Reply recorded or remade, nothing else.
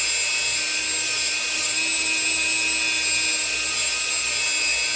recorded